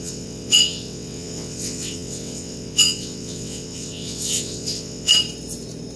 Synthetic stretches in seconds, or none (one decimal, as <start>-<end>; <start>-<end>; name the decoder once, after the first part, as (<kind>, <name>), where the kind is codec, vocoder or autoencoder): 0.0-5.1 (vocoder, WaveNeXt)